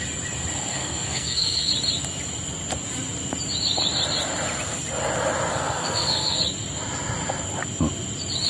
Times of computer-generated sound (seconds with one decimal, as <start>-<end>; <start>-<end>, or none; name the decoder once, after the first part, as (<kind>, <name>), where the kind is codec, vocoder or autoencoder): 0.7-1.7 (codec, SNAC); 5.5-6.4